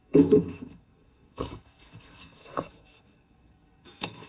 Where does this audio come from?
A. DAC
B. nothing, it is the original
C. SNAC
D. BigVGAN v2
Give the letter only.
C